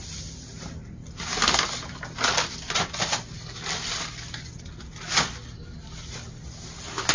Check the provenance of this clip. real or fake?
real